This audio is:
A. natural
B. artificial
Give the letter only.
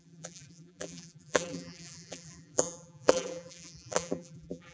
B